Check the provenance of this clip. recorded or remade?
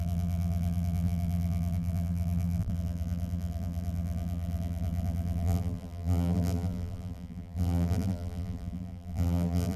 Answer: remade